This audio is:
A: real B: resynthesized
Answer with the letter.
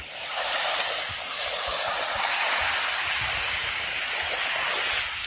A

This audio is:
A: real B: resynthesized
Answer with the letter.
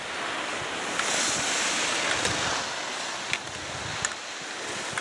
A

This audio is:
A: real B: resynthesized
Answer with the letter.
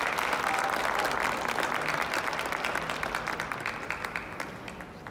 A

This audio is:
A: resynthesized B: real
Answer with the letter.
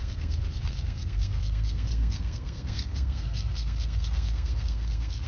A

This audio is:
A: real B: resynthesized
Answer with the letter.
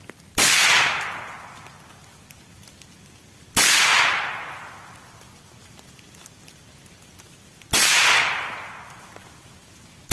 A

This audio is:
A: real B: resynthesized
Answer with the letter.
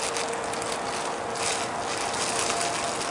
A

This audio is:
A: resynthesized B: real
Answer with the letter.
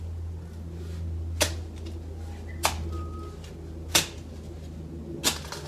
B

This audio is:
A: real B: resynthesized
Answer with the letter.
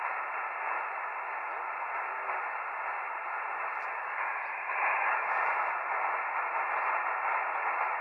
A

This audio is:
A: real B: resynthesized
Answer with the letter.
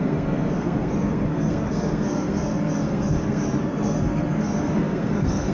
B